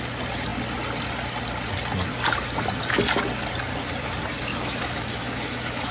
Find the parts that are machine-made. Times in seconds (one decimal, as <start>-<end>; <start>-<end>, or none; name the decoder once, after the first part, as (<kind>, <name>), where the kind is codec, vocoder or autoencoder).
4.5-5.9 (autoencoder, DAC-VAE)